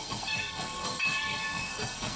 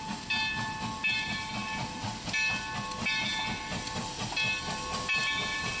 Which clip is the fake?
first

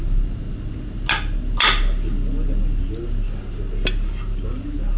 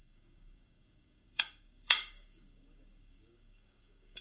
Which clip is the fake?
second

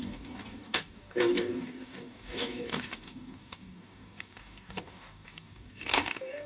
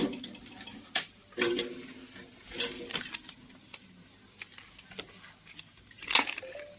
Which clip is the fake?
first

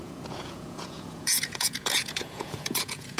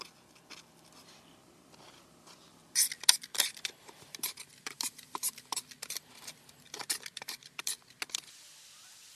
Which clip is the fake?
first